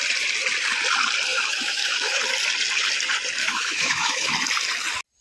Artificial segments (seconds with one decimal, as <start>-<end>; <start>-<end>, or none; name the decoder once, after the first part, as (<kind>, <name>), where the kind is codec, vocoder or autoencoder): 1.3-2.2 (autoencoder, DAC-VAE); 3.4-4.3